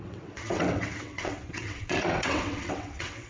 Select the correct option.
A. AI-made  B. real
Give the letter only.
A